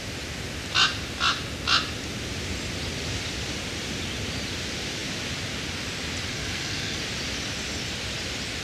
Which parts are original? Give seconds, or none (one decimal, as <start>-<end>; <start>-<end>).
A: 0.0-6.3; 7.0-8.6